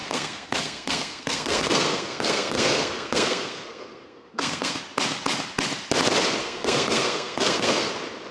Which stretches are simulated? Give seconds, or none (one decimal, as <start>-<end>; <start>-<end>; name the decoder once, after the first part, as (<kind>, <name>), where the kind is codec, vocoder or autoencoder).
0.0-4.8 (codec, SNAC); 6.4-7.9